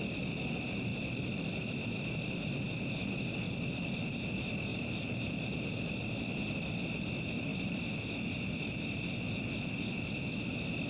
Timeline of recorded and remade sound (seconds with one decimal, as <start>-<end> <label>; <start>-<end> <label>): 0.0-0.9 recorded; 0.9-1.6 remade; 1.6-3.0 recorded; 3.0-4.1 remade; 4.1-7.5 recorded; 7.5-9.4 remade; 9.4-10.9 recorded